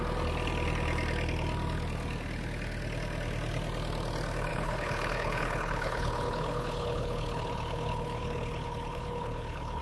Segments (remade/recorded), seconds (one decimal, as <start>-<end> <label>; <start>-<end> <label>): 0.0-4.5 recorded; 4.5-9.8 remade